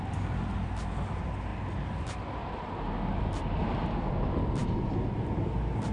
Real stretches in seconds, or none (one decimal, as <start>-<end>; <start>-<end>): 0.0-5.9